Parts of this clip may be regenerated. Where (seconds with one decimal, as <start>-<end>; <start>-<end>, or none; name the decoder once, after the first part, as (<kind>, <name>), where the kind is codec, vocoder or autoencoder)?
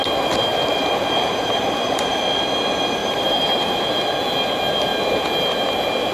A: 0.5-2.2 (vocoder, BigVGAN v2); 3.0-3.8